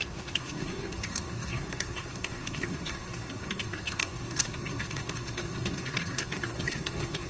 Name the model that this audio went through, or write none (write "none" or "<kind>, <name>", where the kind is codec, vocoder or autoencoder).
codec, SNAC